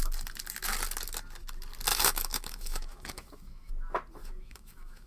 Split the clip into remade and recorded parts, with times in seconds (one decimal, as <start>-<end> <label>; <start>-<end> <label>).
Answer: 0.0-1.9 recorded; 1.9-3.7 remade; 3.7-4.2 recorded; 4.2-5.1 remade